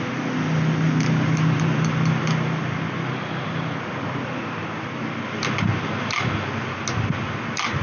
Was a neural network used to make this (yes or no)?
no